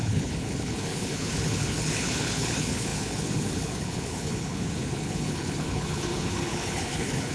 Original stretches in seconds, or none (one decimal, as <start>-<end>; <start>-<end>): none